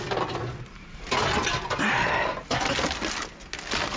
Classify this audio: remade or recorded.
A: recorded